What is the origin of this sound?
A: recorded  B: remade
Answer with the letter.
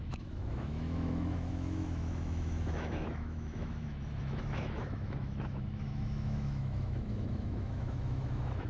B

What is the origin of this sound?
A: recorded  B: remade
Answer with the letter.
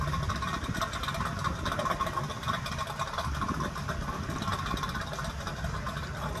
A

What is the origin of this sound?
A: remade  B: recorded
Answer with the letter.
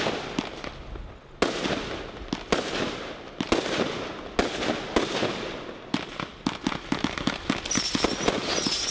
B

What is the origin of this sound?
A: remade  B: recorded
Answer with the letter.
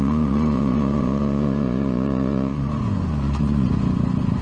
A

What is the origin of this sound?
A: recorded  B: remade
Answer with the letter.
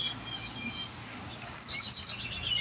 A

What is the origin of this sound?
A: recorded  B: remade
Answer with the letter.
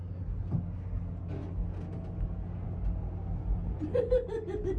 A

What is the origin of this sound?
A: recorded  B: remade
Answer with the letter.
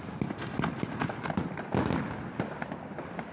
A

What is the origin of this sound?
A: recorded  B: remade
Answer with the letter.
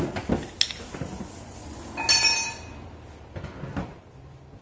A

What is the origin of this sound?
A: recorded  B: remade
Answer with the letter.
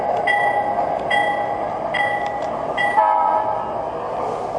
A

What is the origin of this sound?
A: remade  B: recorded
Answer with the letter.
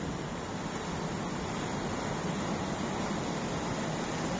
B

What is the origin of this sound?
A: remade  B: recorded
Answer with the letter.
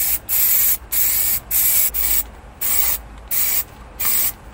B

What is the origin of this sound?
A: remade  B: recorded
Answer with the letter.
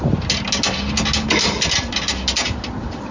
B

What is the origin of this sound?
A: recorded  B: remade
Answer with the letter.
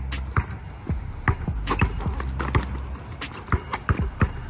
A